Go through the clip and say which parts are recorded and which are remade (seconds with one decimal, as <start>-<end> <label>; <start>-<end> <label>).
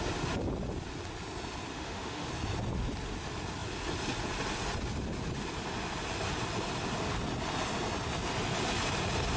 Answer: 0.0-1.7 recorded; 1.7-2.3 remade; 2.3-9.4 recorded